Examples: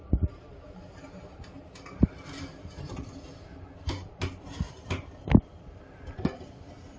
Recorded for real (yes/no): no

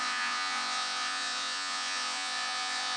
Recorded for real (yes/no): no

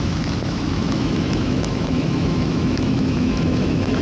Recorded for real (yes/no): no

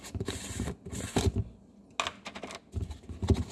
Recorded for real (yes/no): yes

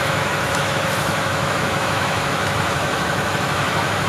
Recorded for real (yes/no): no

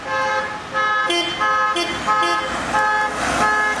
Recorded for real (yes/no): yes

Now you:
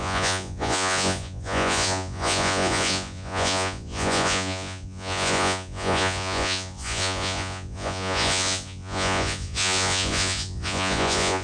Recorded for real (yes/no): no